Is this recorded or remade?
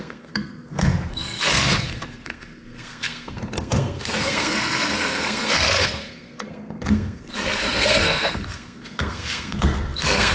remade